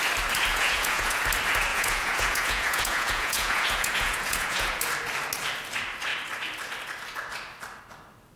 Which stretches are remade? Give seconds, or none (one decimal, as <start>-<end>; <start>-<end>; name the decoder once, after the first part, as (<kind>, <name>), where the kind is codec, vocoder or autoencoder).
0.5-1.2 (vocoder, Vocos); 1.7-4.8